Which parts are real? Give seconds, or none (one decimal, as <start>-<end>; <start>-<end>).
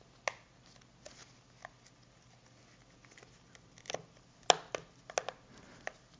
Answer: 0.0-6.2